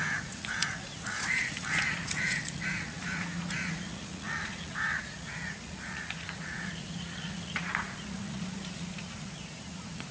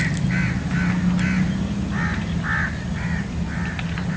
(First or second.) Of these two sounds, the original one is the second